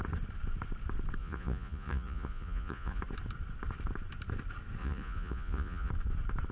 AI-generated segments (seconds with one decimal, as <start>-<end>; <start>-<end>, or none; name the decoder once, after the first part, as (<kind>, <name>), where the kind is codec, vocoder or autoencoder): 1.2-3.0 (vocoder, Vocos); 4.8-5.9